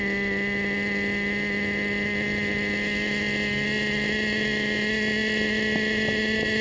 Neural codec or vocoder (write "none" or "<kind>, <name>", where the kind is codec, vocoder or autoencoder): none